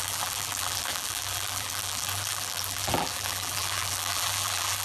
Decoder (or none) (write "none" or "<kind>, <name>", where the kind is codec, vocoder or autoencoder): vocoder, BigVGAN v2